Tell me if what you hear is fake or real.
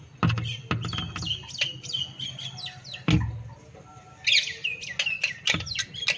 real